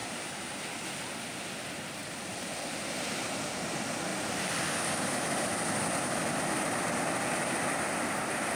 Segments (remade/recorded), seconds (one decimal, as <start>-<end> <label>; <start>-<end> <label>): 0.0-0.6 remade; 0.6-2.0 recorded; 2.0-2.7 remade; 2.7-8.6 recorded